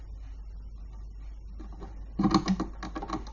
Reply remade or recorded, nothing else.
recorded